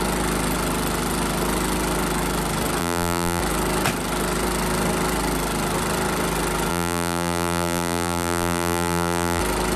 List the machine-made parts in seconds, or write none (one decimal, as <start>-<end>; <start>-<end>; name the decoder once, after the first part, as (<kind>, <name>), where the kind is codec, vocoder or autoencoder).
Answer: 2.8-3.4 (vocoder, BigVGAN v2); 6.7-9.4